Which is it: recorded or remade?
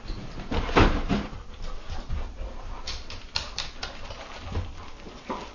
recorded